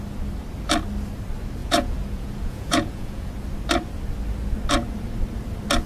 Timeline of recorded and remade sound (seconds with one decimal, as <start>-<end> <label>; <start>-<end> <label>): 0.0-1.6 recorded; 1.6-3.3 remade; 3.3-5.9 recorded